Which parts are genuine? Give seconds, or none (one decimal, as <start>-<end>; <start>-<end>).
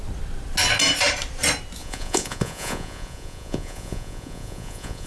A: 0.0-1.8